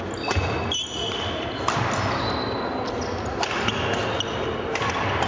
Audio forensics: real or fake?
real